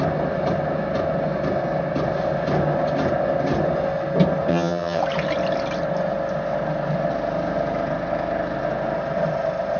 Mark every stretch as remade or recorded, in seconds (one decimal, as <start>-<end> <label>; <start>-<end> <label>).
0.0-4.5 recorded; 4.5-5.0 remade; 5.0-9.8 recorded